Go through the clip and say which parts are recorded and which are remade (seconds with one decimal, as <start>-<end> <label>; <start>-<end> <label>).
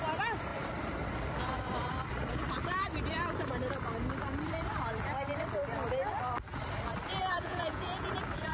0.0-7.2 recorded; 7.2-8.1 remade; 8.1-8.5 recorded